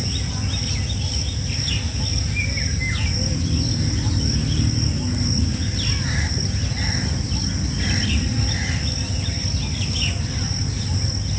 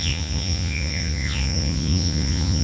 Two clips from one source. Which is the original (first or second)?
first